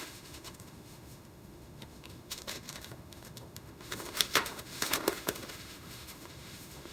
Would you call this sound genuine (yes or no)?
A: no